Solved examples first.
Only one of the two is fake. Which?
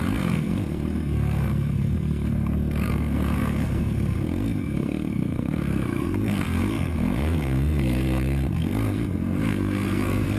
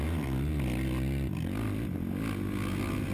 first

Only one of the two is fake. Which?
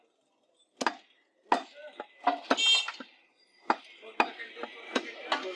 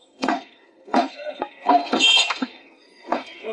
second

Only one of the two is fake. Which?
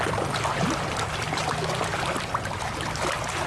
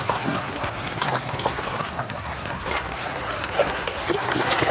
second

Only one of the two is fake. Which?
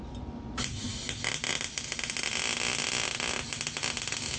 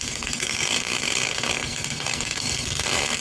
second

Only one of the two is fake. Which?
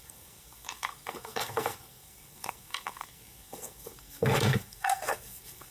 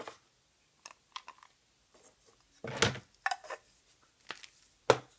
first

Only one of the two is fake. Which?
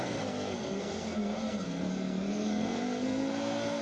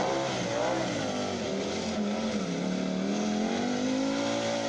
first